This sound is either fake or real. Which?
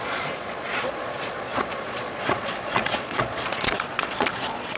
fake